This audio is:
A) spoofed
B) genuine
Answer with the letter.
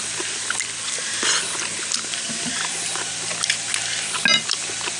B